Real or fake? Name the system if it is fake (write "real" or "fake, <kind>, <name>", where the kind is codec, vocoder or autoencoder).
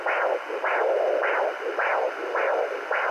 real